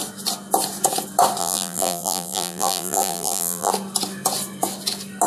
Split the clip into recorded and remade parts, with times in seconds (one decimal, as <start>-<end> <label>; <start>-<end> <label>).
0.0-1.4 recorded; 1.4-3.7 remade; 3.7-5.3 recorded